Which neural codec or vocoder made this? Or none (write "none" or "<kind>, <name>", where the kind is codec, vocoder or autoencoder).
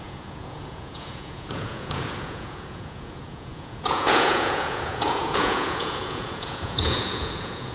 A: vocoder, Vocos